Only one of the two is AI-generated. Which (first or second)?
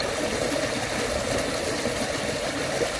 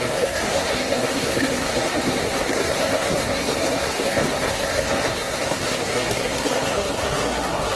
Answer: second